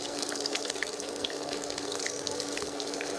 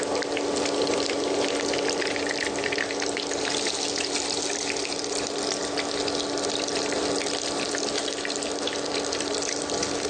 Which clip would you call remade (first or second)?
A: first